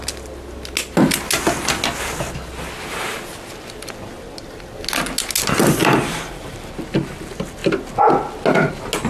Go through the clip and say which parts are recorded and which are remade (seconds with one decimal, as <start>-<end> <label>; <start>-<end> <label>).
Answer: 0.0-5.8 recorded; 5.8-6.7 remade; 6.7-9.1 recorded